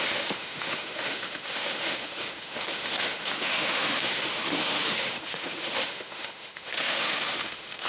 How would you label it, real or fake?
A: fake